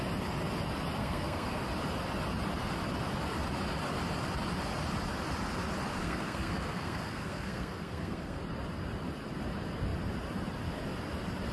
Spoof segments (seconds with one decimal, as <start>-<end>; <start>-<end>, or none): 1.0-1.6; 6.0-8.4